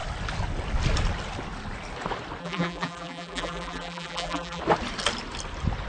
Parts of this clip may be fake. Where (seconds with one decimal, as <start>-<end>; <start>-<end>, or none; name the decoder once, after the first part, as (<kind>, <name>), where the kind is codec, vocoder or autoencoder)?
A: 2.4-4.6 (vocoder, BigVGAN v2)